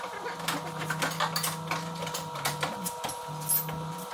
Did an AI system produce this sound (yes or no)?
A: no